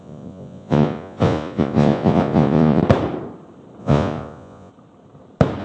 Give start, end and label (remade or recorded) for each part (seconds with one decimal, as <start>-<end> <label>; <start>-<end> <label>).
0.0-2.8 remade; 2.8-3.8 recorded; 3.8-4.7 remade; 4.7-5.6 recorded